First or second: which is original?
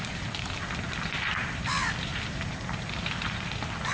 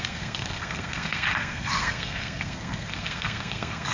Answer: first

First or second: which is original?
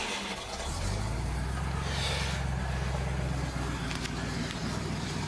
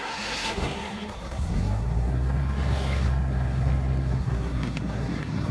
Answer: first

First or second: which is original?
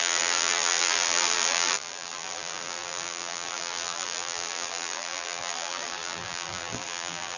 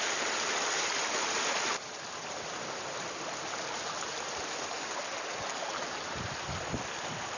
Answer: second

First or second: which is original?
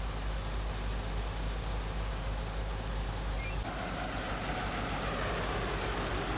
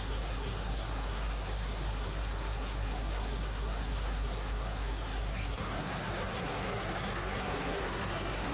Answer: first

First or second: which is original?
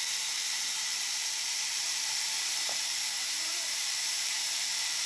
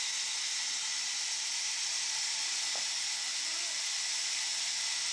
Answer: second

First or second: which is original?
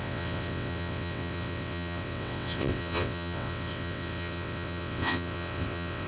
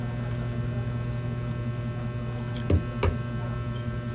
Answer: second